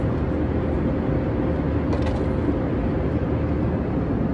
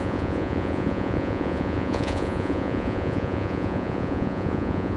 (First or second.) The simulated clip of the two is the second